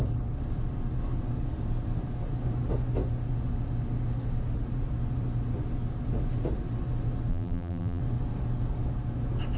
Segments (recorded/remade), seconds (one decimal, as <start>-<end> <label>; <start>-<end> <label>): 0.0-7.3 recorded; 7.3-8.0 remade; 8.0-9.6 recorded

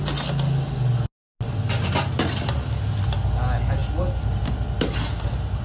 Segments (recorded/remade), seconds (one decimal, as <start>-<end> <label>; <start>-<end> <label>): 0.0-5.6 recorded

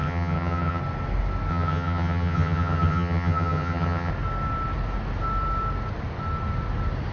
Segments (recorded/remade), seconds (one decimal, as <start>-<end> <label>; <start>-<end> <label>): 0.0-0.8 remade; 0.8-1.5 recorded; 1.5-4.1 remade; 4.1-7.1 recorded

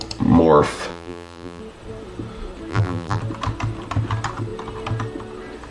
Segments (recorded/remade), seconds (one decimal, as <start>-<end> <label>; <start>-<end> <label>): 0.0-0.9 recorded; 0.9-1.6 remade; 1.6-2.7 recorded; 2.7-3.2 remade; 3.2-5.7 recorded

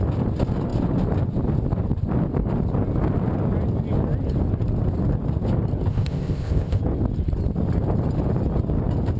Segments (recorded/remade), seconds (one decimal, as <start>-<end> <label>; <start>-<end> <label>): 0.0-5.9 recorded; 5.9-6.8 remade; 6.8-9.2 recorded